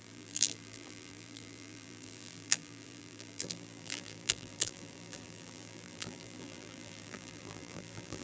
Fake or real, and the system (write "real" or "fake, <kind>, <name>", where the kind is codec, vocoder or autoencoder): fake, vocoder, BigVGAN v2